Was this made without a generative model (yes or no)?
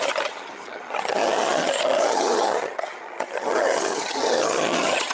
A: no